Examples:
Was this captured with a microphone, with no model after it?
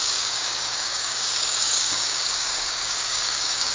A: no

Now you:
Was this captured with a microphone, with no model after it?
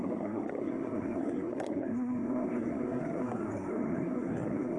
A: no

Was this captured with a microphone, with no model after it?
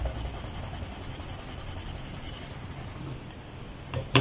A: no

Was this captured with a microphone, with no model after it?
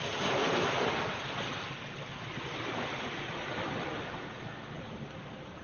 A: yes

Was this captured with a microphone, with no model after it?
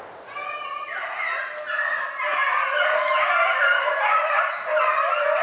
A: yes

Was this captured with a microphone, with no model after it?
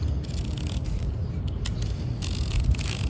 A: yes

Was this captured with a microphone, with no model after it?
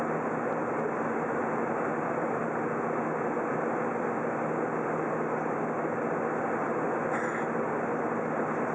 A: yes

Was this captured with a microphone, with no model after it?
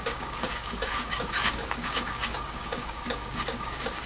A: no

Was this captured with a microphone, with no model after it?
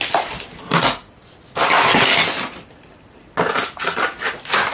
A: yes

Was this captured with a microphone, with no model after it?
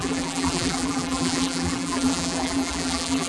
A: no